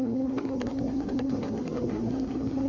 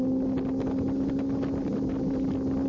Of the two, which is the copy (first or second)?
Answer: first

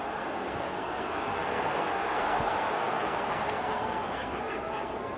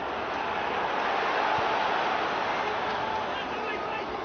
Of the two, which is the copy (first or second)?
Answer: first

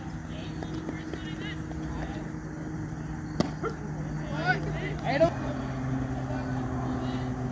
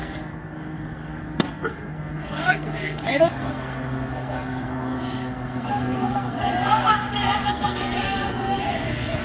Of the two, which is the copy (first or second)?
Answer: second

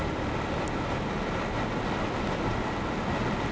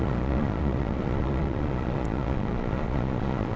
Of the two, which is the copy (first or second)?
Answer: second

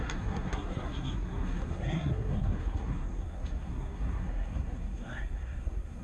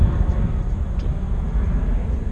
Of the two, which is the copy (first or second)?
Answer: first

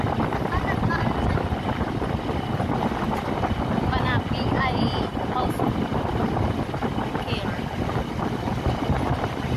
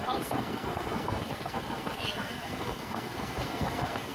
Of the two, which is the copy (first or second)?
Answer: second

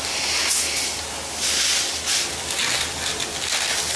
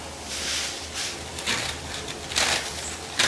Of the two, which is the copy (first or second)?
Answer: second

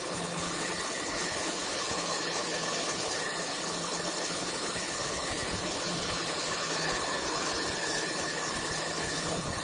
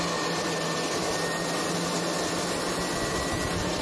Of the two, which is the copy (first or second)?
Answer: first